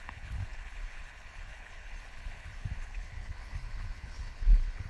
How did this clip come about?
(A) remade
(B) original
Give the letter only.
A